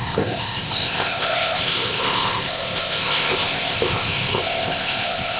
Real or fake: fake